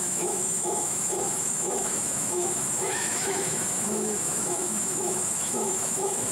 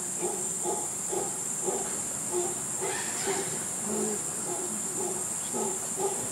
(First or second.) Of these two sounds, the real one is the second